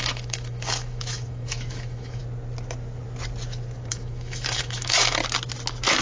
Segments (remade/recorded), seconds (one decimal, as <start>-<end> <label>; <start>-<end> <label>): 0.0-2.2 remade; 2.2-3.9 recorded; 3.9-5.2 remade; 5.2-6.0 recorded